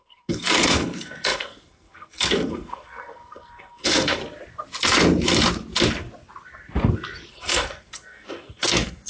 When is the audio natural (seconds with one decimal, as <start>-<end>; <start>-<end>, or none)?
4.2-7.3